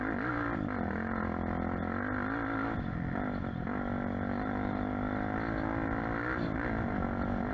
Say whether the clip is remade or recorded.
recorded